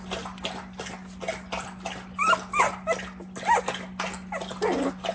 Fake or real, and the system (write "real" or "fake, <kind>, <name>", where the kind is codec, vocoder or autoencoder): real